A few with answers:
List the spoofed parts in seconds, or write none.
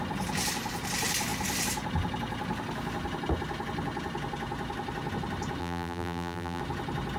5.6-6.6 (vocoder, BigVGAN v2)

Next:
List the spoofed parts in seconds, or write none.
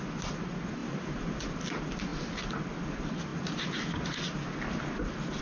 0.8-1.4 (vocoder, BigVGAN v2)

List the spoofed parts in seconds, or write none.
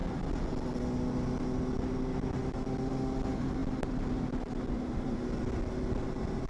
none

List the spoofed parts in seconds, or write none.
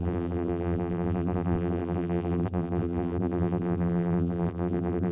0.0-5.1 (vocoder, BigVGAN v2)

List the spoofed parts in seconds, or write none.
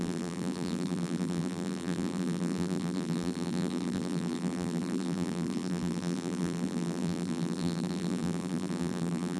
0.0-9.4 (vocoder, BigVGAN v2)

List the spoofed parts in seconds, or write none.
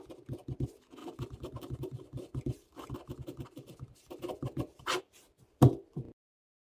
1.0-5.0 (vocoder, BigVGAN v2)